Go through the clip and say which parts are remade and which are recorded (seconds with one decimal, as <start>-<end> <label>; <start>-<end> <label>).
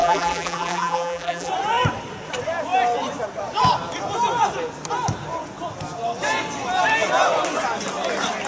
0.0-1.5 remade; 1.5-8.5 recorded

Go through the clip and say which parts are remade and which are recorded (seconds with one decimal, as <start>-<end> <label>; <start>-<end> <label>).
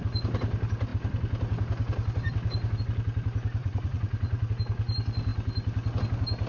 0.0-3.6 recorded; 3.6-4.5 remade; 4.5-6.5 recorded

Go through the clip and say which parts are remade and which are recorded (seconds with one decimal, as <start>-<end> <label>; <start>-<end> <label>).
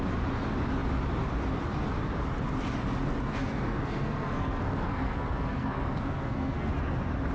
0.0-3.3 recorded; 3.3-6.7 remade; 6.7-7.3 recorded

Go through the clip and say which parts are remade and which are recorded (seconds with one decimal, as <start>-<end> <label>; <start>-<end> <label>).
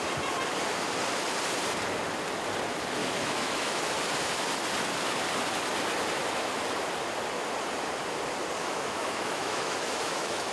0.0-3.0 recorded; 3.0-3.9 remade; 3.9-8.6 recorded; 8.6-10.5 remade